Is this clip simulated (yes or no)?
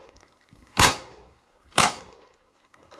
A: yes